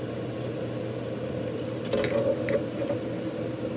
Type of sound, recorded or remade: recorded